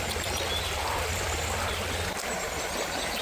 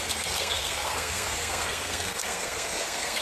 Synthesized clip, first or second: second